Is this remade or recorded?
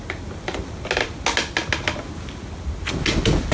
recorded